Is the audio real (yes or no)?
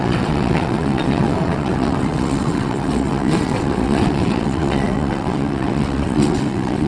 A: no